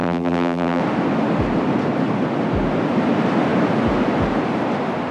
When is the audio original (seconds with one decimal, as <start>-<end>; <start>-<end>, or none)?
0.8-5.1